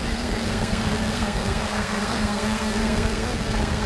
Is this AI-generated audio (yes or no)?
yes